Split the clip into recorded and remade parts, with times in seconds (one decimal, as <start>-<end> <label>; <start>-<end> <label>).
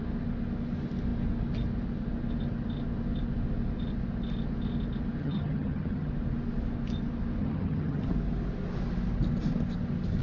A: 0.0-5.2 recorded; 5.2-6.1 remade; 6.1-7.4 recorded; 7.4-8.1 remade; 8.1-10.2 recorded